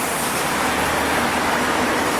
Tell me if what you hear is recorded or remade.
remade